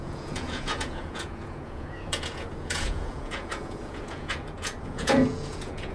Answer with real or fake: fake